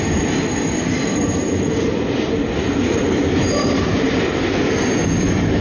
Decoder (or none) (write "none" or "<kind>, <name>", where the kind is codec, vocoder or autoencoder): vocoder, BigVGAN v2